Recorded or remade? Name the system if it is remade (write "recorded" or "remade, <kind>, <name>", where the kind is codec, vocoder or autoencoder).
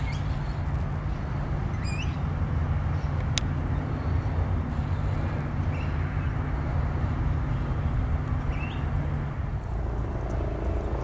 recorded